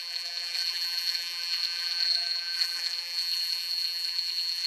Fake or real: fake